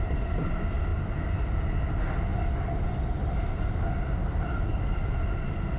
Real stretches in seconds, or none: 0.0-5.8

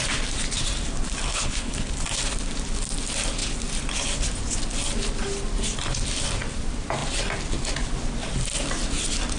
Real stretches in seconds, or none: 0.0-1.3; 1.9-9.4

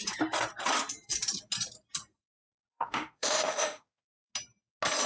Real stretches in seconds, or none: 0.0-2.7; 4.3-5.1

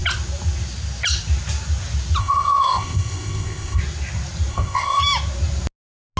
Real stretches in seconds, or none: 0.0-2.2; 3.8-4.5; 5.0-6.2

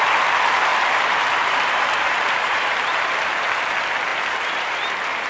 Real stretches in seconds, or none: 0.0-0.7; 3.0-4.1

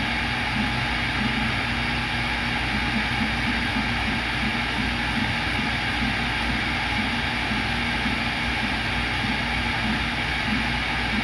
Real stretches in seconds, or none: 0.0-11.2

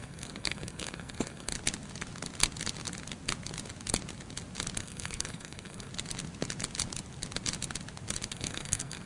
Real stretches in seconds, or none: 1.5-4.8; 5.9-8.3